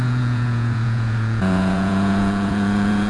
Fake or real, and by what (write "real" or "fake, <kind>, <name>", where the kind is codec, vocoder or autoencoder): fake, vocoder, Vocos